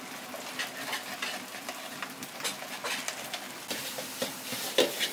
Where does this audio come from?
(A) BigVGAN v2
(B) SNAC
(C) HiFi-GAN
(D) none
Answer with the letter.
D